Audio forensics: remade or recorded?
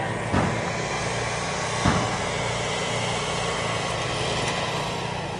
recorded